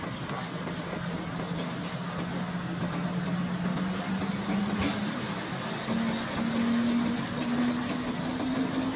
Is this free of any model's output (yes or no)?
yes